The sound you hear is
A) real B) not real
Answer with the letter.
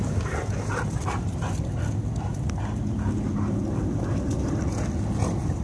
A